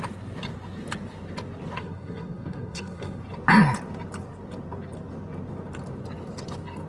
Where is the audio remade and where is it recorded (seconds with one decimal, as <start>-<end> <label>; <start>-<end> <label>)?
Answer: 0.0-1.8 recorded; 1.8-3.2 remade; 3.2-6.9 recorded